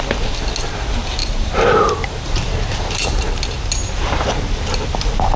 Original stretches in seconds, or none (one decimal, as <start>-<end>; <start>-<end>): 0.0-1.2; 3.4-3.8; 4.6-5.4